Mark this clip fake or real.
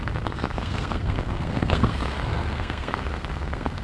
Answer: fake